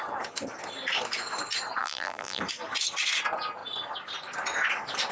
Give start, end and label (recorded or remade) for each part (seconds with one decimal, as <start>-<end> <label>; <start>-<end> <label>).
0.0-1.8 recorded; 1.8-2.4 remade; 2.4-5.1 recorded